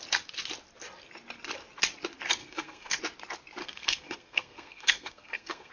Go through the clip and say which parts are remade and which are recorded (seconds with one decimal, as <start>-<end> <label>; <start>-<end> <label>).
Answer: 0.0-2.4 recorded; 2.4-3.0 remade; 3.0-3.6 recorded; 3.6-5.7 remade